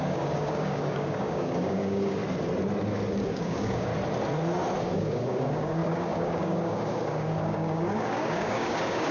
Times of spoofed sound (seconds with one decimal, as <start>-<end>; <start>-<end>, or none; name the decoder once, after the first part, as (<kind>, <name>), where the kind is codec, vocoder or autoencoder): 0.0-2.2 (codec, DAC); 3.1-3.9; 4.8-9.1